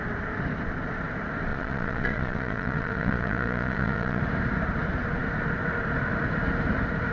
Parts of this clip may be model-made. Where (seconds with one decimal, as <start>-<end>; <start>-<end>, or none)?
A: 1.5-4.2